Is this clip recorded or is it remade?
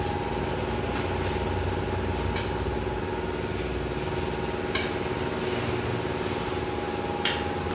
recorded